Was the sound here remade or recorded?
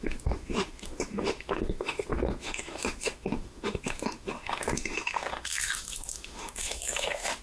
remade